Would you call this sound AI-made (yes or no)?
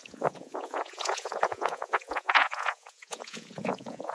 yes